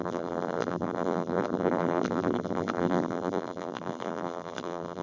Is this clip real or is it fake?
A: fake